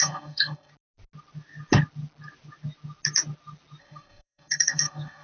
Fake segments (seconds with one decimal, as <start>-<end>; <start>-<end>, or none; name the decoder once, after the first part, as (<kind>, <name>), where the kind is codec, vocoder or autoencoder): 0.0-0.7 (codec, SNAC); 3.8-5.2